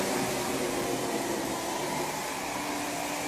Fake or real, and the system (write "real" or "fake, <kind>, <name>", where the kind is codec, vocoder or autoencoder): real